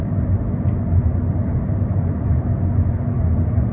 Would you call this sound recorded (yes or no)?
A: yes